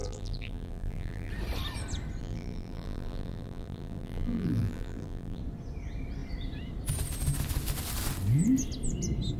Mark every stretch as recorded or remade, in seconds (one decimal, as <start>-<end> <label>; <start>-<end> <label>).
0.0-1.3 remade; 1.3-2.2 recorded; 2.2-5.4 remade; 5.4-9.4 recorded